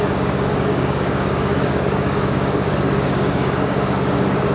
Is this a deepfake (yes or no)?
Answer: yes